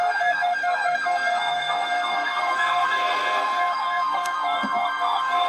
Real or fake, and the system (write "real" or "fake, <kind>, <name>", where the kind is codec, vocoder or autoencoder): fake, codec, SNAC